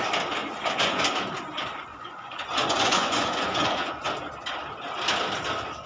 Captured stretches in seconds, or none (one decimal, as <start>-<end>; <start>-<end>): 0.0-0.4; 1.0-1.9; 4.1-5.9